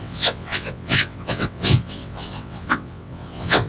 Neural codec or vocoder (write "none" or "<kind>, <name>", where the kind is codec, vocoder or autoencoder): vocoder, WaveNeXt